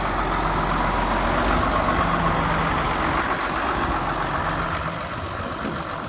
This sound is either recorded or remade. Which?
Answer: recorded